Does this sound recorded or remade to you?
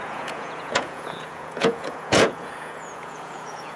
remade